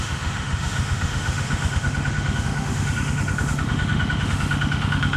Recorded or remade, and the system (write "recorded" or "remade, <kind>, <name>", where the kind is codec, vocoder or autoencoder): remade, autoencoder, DAC-VAE